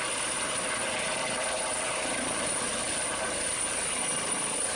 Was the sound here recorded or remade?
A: remade